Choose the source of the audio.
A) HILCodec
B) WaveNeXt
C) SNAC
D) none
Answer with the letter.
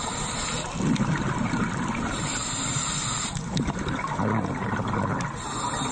D